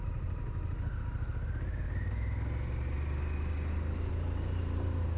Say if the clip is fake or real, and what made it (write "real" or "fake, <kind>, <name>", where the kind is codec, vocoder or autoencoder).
real